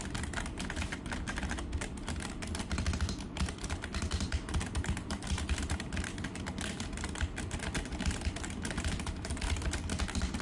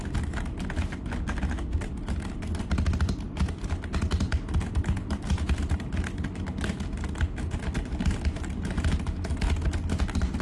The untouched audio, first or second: second